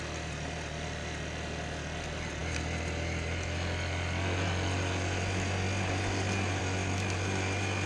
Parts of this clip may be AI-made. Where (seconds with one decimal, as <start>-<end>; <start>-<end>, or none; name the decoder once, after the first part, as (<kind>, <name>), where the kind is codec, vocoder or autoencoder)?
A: none